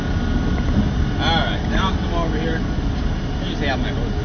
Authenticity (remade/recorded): recorded